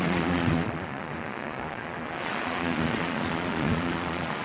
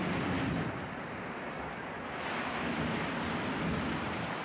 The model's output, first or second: first